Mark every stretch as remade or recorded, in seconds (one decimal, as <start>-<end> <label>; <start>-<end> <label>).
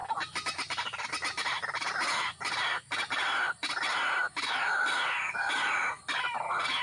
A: 0.0-6.8 recorded